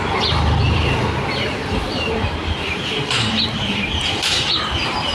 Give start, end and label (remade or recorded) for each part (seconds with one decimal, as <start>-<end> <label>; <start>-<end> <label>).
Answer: 0.0-5.1 remade